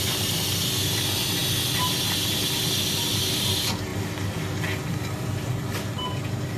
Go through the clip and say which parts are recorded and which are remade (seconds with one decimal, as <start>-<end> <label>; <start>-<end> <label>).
0.0-6.6 recorded